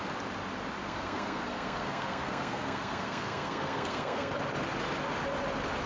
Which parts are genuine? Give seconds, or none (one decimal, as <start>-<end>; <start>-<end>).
0.0-0.8; 4.3-5.9